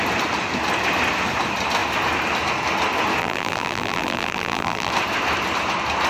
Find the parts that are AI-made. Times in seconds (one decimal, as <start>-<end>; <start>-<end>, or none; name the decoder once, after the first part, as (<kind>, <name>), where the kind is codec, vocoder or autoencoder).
3.2-4.9 (vocoder, BigVGAN v2)